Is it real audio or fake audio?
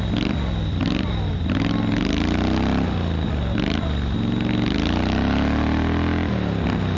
real